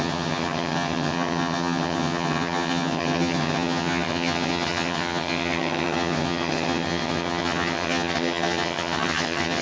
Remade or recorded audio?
remade